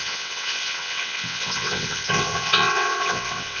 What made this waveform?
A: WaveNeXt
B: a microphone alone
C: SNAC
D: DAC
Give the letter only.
A